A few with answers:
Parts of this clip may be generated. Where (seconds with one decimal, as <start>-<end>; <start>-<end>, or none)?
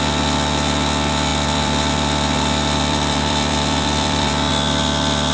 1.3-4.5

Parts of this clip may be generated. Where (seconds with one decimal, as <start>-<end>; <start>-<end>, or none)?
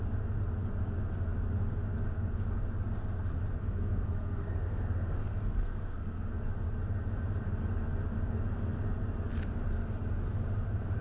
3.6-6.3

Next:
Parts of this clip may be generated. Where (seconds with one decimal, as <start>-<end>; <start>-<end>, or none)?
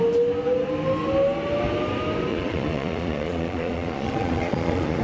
2.3-5.0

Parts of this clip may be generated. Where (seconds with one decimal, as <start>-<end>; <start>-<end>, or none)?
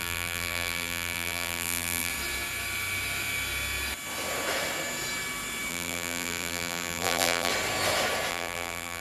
0.0-2.1; 5.7-7.5; 8.3-9.0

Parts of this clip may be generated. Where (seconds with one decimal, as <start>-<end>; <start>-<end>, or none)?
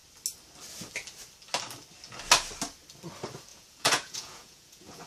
3.5-5.1